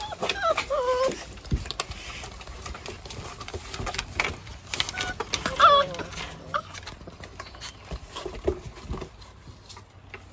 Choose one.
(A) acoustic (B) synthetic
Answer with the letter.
A